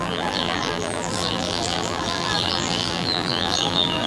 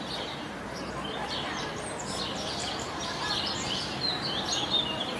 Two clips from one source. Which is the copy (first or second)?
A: first